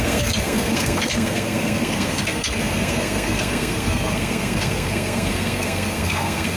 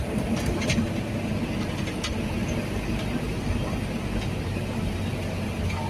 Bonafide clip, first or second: second